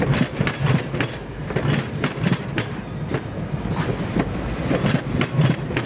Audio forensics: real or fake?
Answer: real